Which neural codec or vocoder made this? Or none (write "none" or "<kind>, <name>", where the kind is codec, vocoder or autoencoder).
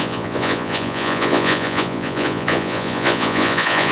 vocoder, Vocos